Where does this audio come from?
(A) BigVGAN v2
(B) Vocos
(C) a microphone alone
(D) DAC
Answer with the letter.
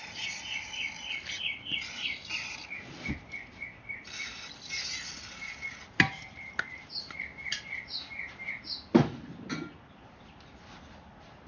C